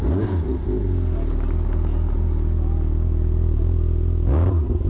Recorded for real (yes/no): yes